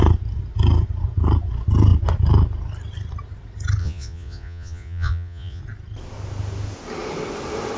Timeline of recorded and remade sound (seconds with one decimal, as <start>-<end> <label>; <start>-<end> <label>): 0.0-3.8 recorded; 3.8-5.6 remade; 5.6-7.8 recorded